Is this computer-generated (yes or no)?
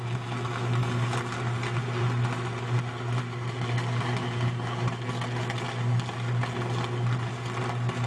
no